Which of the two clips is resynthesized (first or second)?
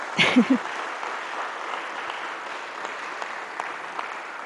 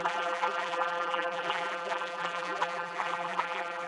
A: second